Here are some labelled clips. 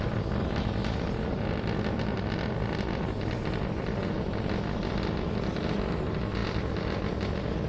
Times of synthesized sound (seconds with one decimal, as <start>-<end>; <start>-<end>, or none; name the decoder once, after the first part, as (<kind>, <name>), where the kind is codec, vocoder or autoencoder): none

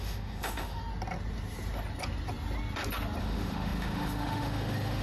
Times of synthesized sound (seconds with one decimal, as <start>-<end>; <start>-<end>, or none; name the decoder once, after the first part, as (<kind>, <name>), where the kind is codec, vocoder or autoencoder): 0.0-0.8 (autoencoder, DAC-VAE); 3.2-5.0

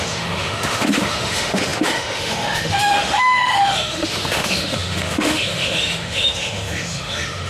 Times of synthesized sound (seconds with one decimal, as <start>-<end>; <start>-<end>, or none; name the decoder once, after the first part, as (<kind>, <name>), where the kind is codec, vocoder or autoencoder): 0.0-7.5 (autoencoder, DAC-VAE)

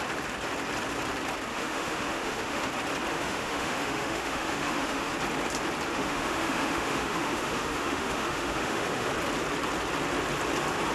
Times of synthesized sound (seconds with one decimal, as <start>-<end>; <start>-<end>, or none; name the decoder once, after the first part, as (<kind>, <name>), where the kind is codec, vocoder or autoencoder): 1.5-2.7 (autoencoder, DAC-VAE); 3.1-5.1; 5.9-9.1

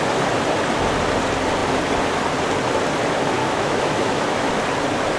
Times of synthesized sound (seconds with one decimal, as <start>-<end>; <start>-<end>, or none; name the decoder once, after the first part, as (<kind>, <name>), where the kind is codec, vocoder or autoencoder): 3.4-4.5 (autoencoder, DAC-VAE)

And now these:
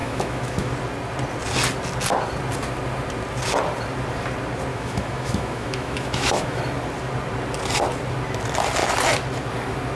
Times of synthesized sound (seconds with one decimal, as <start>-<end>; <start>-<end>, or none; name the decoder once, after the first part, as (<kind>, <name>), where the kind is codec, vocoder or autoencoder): 0.0-0.7 (autoencoder, DAC-VAE); 4.7-6.6